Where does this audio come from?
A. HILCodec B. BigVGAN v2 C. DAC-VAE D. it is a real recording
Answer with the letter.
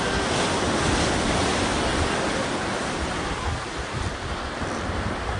D